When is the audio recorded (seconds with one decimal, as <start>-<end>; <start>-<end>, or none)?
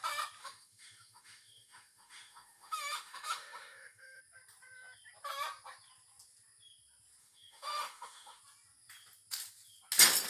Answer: 0.0-0.4; 4.2-7.2; 8.4-10.3